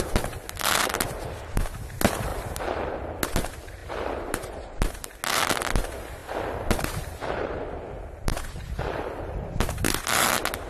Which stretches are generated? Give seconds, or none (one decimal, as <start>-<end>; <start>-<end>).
none